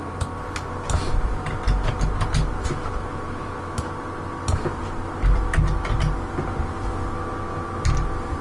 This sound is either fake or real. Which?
real